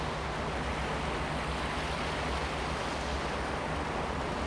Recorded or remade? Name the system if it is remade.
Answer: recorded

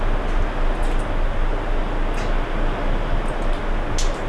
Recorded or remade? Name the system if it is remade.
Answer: recorded